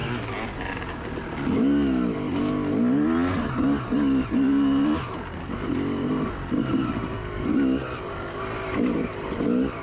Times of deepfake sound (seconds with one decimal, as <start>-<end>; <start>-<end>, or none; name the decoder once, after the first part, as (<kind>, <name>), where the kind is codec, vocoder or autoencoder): none